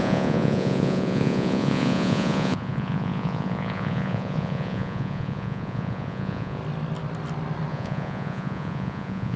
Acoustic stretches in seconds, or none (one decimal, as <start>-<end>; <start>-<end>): 6.6-7.7

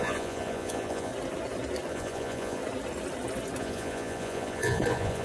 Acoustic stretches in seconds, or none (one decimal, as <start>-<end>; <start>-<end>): 1.1-1.9; 2.6-3.6

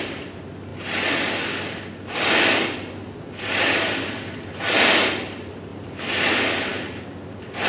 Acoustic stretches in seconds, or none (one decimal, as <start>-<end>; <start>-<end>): 0.0-7.7

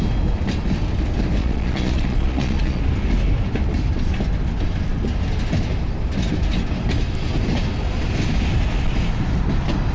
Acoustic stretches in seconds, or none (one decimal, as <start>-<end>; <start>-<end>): 0.0-1.4; 2.8-9.9

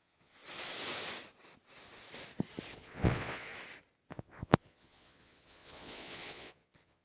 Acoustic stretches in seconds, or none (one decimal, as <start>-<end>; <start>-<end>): 0.4-2.7; 3.5-4.1

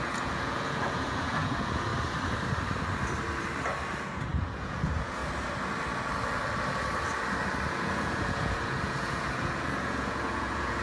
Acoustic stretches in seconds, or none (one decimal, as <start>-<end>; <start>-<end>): 1.9-4.0; 5.2-7.7

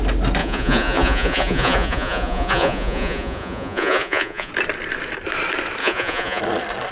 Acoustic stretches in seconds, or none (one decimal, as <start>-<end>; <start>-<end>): 0.0-0.4; 4.5-5.8; 6.4-6.9